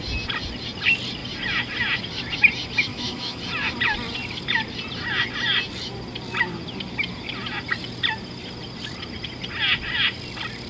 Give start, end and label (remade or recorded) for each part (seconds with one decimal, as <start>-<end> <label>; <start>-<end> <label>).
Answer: 0.0-2.9 recorded; 2.9-3.4 remade; 3.4-10.7 recorded